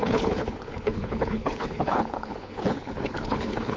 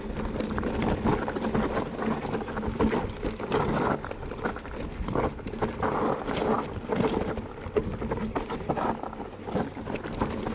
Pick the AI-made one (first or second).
first